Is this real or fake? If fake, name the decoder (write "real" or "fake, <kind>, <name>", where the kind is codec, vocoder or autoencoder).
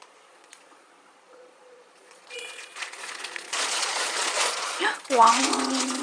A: fake, vocoder, Vocos